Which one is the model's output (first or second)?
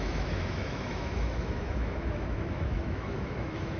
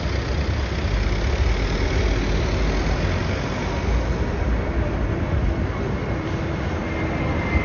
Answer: first